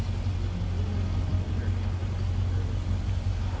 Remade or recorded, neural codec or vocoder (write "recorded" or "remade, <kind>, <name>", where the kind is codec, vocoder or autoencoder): recorded